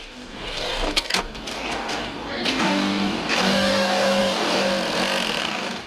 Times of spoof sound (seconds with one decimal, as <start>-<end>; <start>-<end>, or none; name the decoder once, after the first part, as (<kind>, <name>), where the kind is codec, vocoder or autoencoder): 0.0-4.7 (codec, DAC); 5.4-5.9